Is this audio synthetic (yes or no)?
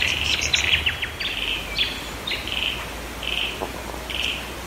no